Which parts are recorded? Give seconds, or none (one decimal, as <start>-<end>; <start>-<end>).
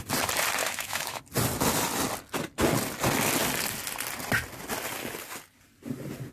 0.0-0.6; 1.2-6.3